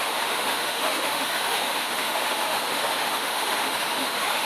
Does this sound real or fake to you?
fake